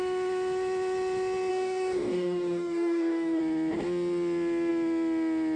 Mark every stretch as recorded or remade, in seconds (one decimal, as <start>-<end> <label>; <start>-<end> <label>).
0.0-1.5 recorded; 1.5-3.4 remade; 3.4-5.6 recorded